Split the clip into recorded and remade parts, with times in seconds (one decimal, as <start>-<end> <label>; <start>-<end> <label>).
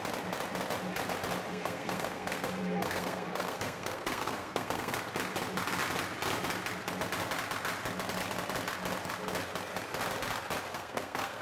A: 0.0-1.5 recorded; 1.5-5.0 remade; 5.0-10.7 recorded; 10.7-11.4 remade